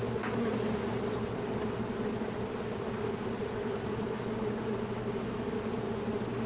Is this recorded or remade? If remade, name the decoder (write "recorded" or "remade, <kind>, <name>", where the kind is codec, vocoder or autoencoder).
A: recorded